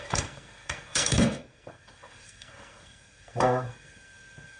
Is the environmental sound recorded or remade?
remade